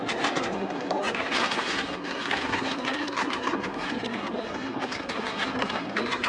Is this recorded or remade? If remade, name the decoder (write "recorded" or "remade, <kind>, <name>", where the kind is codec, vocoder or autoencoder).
remade, codec, SNAC